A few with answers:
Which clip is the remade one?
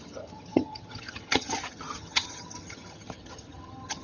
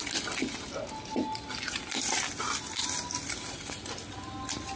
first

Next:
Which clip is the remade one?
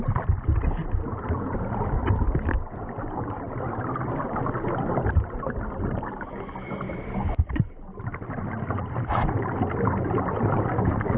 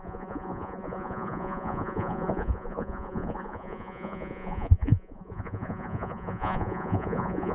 second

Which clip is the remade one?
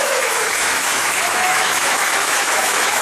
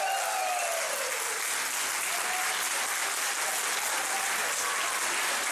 first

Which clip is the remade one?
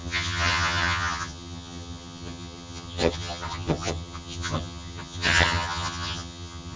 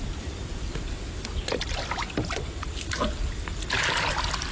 first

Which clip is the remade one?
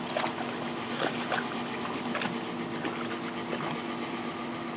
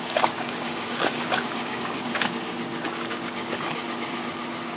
second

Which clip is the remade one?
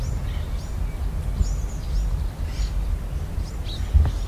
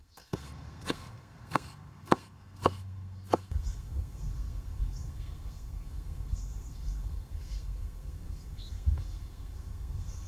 second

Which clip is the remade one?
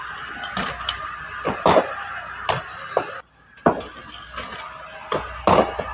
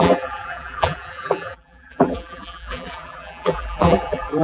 second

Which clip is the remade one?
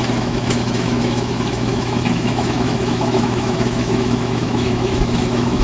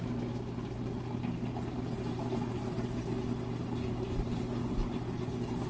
first